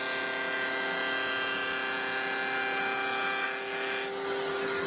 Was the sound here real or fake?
real